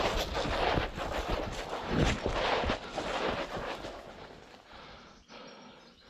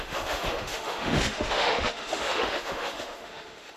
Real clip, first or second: first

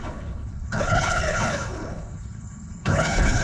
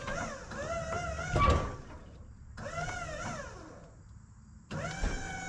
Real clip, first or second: second